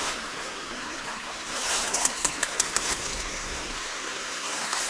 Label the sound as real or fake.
fake